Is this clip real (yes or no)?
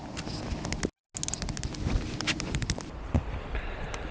yes